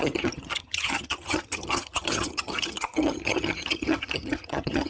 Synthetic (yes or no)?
yes